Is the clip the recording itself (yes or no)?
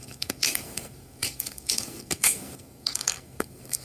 no